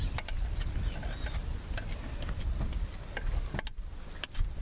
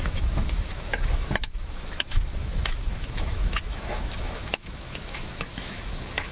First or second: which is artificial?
second